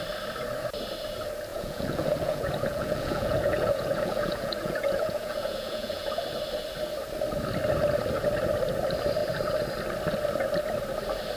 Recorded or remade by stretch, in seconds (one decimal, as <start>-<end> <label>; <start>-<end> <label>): 0.0-1.5 recorded; 1.5-6.2 remade; 6.2-11.4 recorded